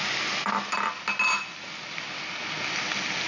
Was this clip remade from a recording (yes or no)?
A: no